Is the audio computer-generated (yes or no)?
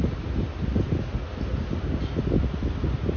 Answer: no